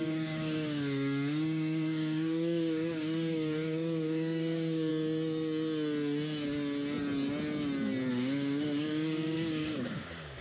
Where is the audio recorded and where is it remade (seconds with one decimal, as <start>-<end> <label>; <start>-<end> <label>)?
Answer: 0.0-4.9 remade; 4.9-8.1 recorded; 8.1-10.4 remade